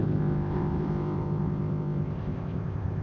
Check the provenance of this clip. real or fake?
fake